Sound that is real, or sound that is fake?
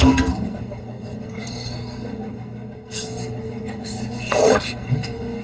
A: fake